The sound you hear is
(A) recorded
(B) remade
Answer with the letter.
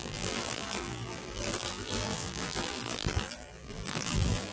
B